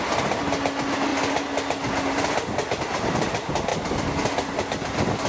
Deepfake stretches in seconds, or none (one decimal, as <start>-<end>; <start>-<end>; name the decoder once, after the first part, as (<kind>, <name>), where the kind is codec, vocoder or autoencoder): none